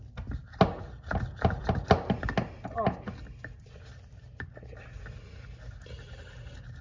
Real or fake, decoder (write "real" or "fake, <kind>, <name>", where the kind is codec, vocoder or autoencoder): real